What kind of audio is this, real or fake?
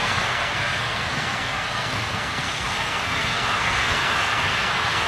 fake